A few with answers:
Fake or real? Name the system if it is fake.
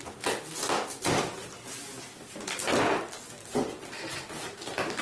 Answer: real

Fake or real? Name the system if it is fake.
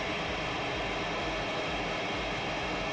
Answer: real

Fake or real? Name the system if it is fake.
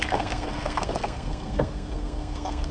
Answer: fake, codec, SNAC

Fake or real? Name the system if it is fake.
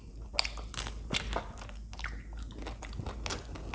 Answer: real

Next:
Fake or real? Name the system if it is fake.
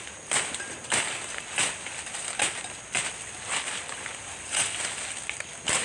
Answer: real